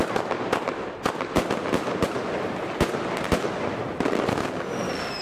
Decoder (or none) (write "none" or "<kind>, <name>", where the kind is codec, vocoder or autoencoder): none